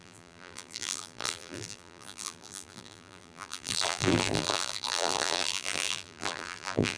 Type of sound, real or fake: fake